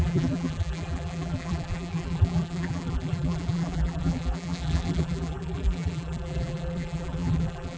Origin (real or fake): fake